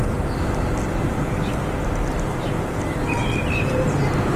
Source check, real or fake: fake